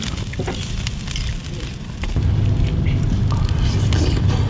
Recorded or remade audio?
recorded